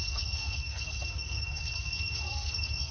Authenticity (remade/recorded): remade